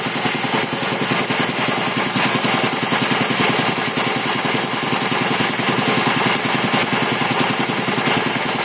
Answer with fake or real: real